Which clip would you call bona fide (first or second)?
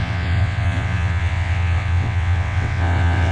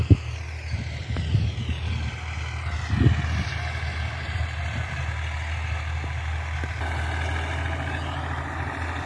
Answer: second